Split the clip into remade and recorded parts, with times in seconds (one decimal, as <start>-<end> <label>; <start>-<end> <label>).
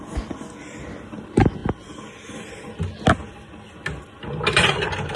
0.0-5.2 recorded